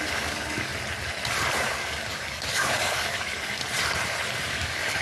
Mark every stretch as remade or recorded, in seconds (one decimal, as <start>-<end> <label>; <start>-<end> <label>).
0.0-0.7 remade; 0.7-1.6 recorded; 1.6-3.6 remade; 3.6-4.5 recorded; 4.5-5.0 remade